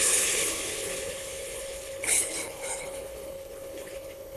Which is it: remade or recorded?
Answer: remade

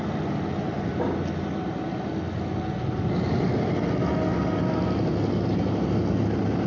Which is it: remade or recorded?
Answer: recorded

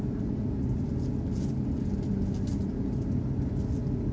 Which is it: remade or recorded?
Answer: recorded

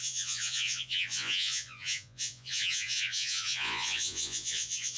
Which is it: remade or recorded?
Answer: remade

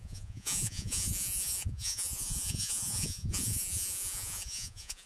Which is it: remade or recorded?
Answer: remade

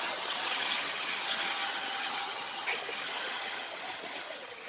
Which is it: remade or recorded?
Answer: remade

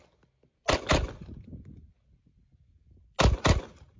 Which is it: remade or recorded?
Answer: recorded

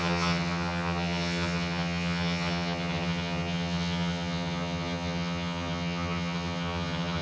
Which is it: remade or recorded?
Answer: remade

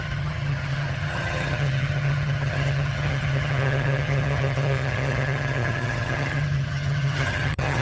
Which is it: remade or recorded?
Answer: remade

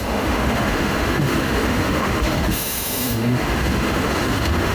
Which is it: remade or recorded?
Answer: remade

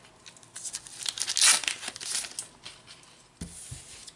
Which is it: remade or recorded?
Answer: recorded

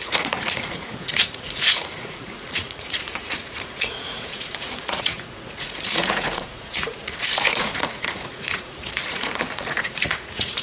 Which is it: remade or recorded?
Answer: remade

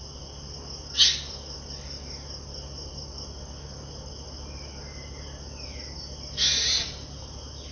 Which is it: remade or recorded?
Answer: recorded